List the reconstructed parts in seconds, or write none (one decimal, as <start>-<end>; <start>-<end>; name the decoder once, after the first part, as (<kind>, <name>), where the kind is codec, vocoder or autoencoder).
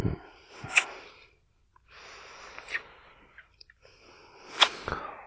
0.0-0.4 (vocoder, BigVGAN v2); 0.9-4.2